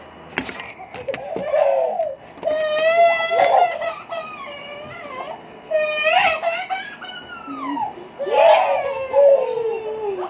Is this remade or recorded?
recorded